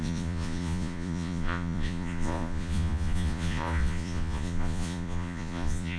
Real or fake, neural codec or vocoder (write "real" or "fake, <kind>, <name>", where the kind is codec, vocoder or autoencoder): fake, vocoder, Vocos